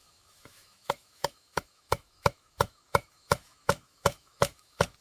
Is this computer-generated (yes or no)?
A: yes